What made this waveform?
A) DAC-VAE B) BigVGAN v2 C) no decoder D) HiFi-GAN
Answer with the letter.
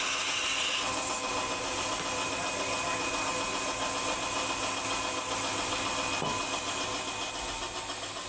C